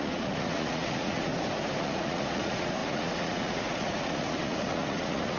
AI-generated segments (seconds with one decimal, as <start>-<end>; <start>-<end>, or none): 0.0-1.3; 1.8-5.4